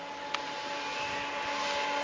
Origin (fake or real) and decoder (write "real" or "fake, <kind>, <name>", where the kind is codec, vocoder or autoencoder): real